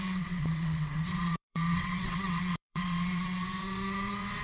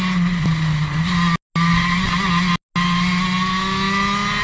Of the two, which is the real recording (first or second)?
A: second